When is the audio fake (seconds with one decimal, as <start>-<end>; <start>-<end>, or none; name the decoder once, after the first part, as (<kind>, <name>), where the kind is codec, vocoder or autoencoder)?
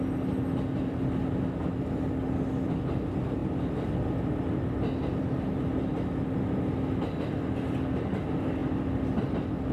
none